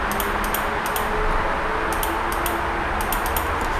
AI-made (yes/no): no